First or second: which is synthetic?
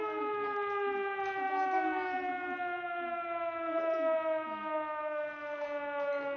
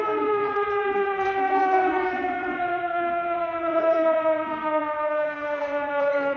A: second